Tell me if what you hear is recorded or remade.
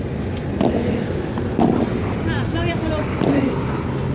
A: recorded